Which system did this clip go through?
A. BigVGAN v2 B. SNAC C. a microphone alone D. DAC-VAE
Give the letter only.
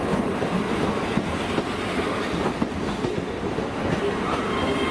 C